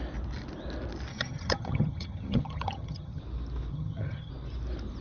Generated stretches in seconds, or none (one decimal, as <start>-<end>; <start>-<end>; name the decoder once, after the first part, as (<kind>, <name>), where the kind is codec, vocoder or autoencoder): 1.1-3.2 (vocoder, HiFi-GAN); 3.7-4.3